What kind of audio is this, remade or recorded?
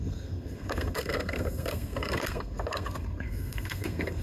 remade